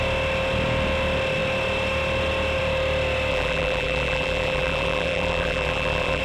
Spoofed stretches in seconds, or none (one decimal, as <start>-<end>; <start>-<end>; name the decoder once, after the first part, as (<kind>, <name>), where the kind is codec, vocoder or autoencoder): 3.3-6.2 (vocoder, BigVGAN v2)